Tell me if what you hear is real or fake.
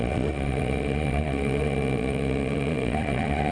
fake